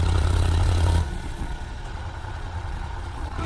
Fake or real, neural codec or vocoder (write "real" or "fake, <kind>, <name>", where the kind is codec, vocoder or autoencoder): fake, vocoder, Vocos